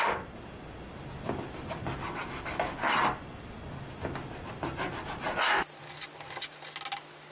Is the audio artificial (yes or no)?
no